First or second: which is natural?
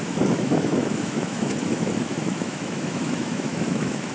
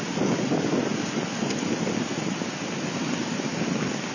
second